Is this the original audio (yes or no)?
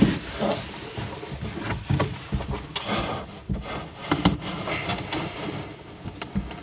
yes